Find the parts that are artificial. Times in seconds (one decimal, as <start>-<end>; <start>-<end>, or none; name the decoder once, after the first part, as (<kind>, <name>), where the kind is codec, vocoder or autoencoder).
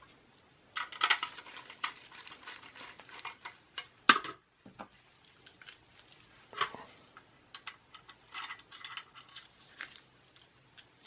1.1-2.9 (vocoder, BigVGAN v2)